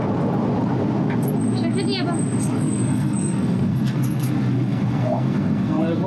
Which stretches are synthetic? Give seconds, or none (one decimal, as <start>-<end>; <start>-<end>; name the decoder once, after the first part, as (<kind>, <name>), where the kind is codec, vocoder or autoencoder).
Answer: 2.4-6.1 (codec, SNAC)